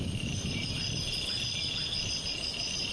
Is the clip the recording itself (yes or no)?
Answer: yes